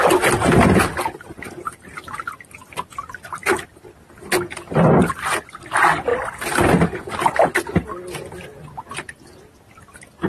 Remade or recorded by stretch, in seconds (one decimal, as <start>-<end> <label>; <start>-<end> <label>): 0.0-10.3 recorded